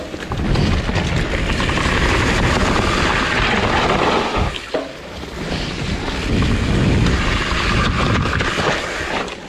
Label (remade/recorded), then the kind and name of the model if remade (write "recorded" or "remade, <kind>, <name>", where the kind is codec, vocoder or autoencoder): recorded